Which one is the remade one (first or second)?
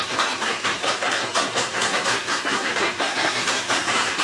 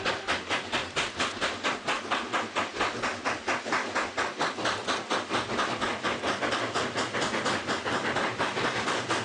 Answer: first